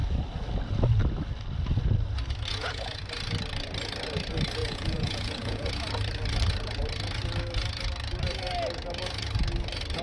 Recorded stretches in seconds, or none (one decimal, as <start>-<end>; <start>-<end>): 0.0-2.5; 3.0-4.6; 5.7-10.0